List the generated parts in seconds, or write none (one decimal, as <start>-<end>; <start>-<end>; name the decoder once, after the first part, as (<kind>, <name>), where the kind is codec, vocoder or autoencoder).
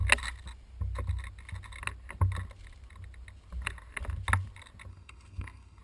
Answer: 4.9-5.8 (codec, SNAC)